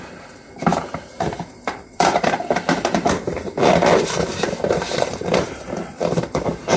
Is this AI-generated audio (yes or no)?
yes